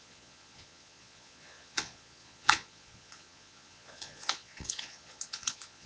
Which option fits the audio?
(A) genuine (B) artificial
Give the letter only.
B